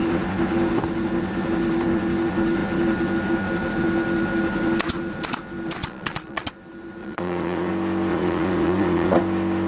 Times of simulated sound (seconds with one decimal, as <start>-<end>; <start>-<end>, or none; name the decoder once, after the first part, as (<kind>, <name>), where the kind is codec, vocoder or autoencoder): 5.8-6.5 (vocoder, Vocos); 7.0-7.7; 8.1-9.2